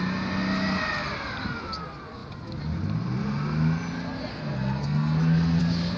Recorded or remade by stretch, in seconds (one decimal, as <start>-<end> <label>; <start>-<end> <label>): 0.0-4.3 recorded; 4.3-5.6 remade; 5.6-6.0 recorded